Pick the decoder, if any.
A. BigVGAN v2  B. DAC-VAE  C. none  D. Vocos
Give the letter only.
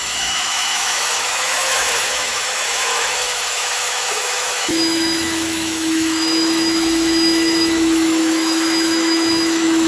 B